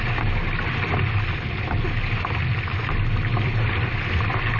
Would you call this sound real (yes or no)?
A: yes